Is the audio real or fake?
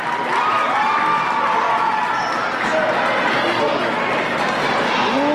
real